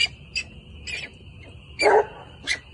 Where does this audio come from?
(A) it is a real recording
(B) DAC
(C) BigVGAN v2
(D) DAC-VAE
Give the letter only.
A